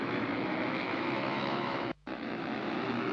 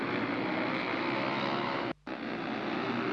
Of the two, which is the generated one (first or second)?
first